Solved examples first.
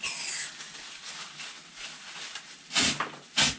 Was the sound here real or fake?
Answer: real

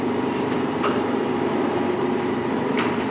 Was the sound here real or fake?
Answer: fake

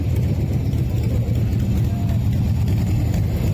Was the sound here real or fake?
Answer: real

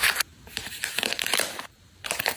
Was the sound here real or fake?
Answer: fake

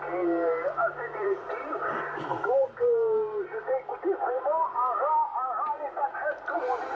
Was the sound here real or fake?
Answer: real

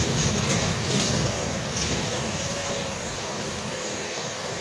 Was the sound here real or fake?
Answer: fake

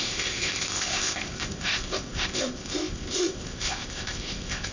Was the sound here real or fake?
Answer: fake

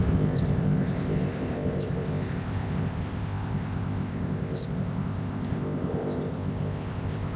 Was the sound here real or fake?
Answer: fake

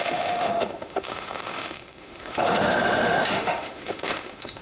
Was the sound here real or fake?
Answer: fake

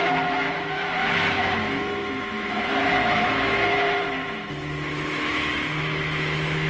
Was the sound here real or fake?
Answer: fake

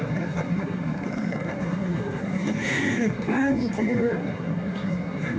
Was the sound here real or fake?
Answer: fake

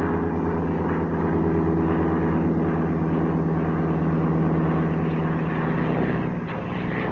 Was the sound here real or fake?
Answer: real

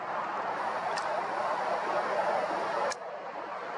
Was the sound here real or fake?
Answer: real